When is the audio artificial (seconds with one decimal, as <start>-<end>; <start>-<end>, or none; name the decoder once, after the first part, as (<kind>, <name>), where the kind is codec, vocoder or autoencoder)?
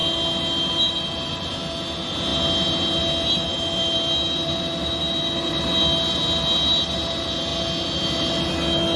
none